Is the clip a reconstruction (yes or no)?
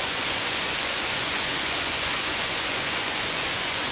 yes